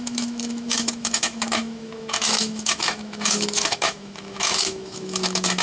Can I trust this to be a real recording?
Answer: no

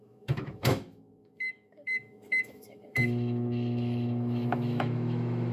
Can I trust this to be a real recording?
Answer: no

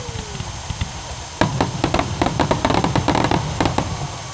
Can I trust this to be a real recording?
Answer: yes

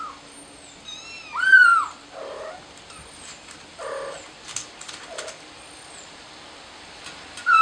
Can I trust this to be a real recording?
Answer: yes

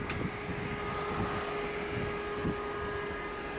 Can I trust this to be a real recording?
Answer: yes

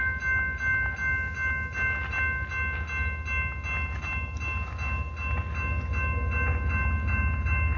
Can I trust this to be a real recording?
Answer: yes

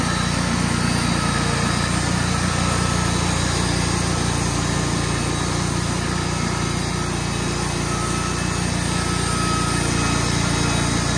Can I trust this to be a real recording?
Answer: yes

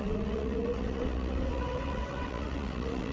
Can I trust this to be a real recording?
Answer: no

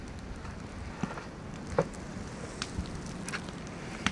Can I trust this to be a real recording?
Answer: yes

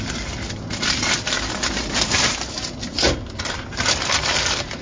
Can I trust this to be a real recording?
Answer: yes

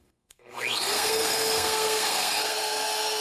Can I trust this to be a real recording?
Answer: no